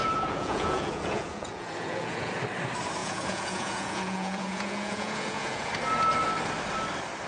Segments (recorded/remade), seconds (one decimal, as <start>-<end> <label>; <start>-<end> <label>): 0.0-2.3 remade; 2.3-3.0 recorded; 3.0-5.7 remade; 5.7-7.3 recorded

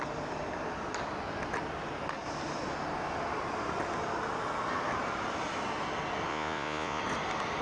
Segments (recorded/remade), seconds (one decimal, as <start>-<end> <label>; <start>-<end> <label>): 0.0-6.3 recorded; 6.3-7.0 remade; 7.0-7.6 recorded

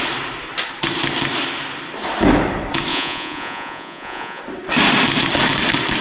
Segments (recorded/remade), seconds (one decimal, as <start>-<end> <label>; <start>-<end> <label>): 0.0-2.9 recorded; 2.9-4.4 remade; 4.4-6.0 recorded

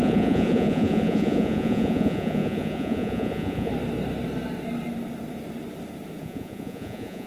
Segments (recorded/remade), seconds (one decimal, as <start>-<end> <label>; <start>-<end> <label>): 0.0-3.7 remade; 3.7-6.2 recorded; 6.2-7.3 remade